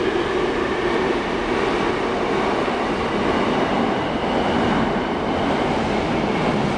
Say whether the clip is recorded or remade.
recorded